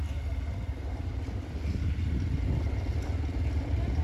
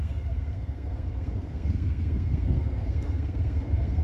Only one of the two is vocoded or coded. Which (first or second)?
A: second